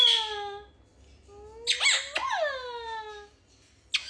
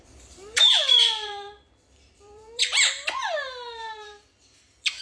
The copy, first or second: second